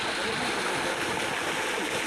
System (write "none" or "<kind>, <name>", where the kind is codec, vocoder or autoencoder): none